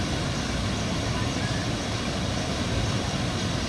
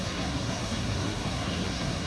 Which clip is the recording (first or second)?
first